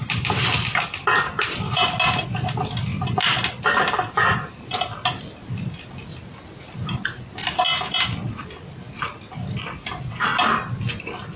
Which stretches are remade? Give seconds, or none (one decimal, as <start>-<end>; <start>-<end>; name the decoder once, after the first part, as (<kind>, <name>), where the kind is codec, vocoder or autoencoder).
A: none